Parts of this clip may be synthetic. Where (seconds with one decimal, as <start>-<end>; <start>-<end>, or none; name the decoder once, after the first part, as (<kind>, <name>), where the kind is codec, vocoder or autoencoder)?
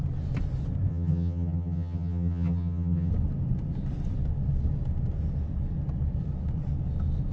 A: 0.9-3.1 (vocoder, HiFi-GAN)